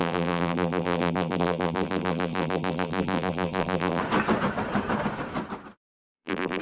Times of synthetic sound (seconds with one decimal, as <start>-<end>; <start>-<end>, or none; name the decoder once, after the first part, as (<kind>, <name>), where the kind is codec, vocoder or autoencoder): 0.0-4.0 (vocoder, BigVGAN v2); 6.0-6.6